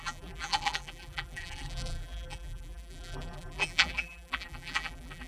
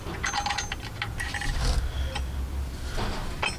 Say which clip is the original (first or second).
second